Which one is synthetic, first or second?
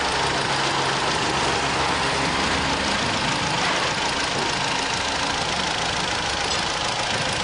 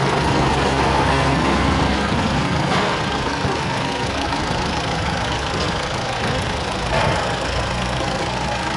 second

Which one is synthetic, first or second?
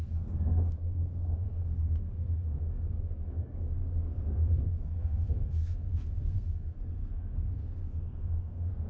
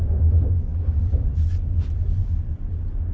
first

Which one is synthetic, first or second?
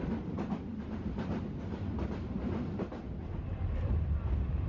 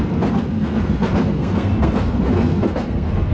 second